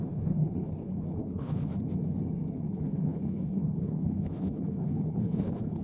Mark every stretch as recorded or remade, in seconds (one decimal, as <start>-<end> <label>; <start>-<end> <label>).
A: 0.0-1.7 remade; 1.7-2.5 recorded; 2.5-5.8 remade